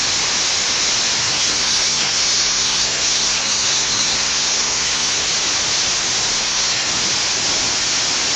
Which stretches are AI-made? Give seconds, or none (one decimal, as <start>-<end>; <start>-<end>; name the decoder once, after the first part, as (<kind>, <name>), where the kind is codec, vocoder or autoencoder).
1.2-5.2 (codec, SNAC); 6.3-6.9